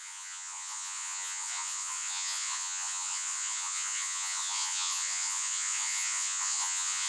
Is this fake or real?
fake